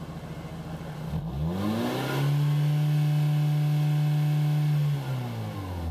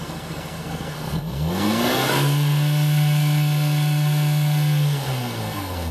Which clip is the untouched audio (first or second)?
first